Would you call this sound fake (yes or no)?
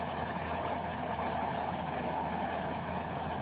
yes